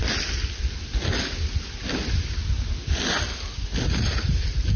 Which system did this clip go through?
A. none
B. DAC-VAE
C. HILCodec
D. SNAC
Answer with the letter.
A